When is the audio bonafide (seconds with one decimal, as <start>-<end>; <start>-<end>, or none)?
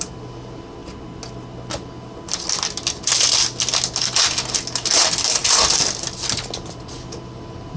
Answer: 0.0-7.8